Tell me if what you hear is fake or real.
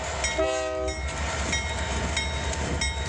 real